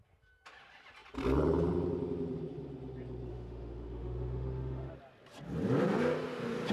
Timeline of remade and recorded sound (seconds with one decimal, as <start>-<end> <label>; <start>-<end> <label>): 0.0-3.3 recorded; 3.3-4.9 remade; 4.9-6.7 recorded